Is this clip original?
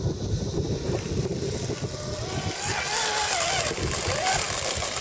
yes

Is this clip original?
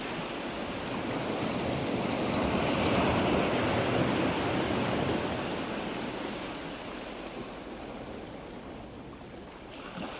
yes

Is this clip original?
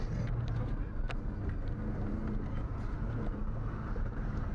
yes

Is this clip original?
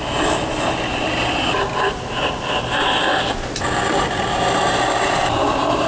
yes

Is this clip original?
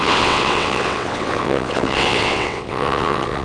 no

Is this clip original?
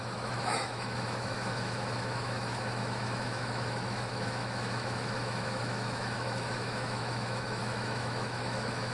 no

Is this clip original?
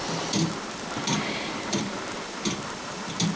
no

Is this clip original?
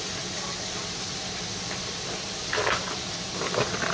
yes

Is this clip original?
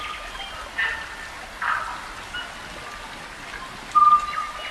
yes